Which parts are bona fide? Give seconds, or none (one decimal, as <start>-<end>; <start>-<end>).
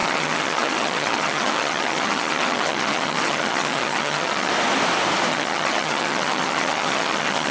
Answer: 4.5-5.3